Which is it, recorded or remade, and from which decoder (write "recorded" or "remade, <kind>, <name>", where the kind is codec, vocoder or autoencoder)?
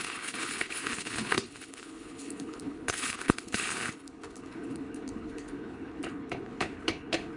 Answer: remade, codec, HILCodec